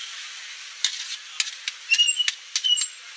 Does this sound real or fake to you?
real